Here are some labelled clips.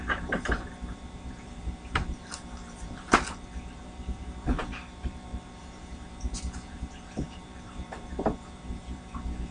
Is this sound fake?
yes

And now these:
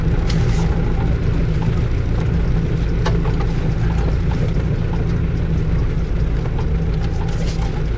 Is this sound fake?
no